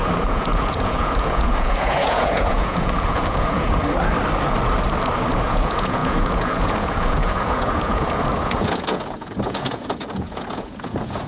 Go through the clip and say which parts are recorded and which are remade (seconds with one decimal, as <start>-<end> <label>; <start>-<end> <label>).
0.0-3.8 remade; 3.8-5.3 recorded; 5.3-11.3 remade